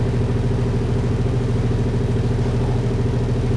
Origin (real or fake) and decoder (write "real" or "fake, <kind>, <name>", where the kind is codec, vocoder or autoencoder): real